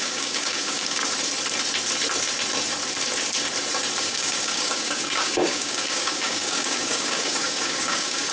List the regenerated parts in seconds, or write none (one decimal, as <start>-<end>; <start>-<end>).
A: 0.0-1.0; 4.0-8.3